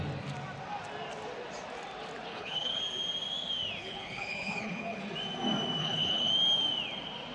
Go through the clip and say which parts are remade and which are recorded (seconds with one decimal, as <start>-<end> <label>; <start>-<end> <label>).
0.0-2.3 recorded; 2.3-2.8 remade; 2.8-3.8 recorded; 3.8-5.0 remade; 5.0-5.8 recorded; 5.8-6.3 remade; 6.3-7.3 recorded